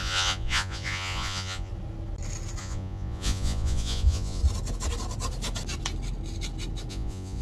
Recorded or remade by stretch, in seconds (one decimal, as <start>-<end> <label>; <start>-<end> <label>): 0.0-1.7 remade; 1.7-2.6 recorded; 2.6-4.4 remade; 4.4-6.9 recorded; 6.9-7.4 remade